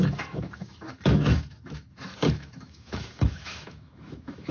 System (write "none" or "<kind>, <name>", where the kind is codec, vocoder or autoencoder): autoencoder, DAC-VAE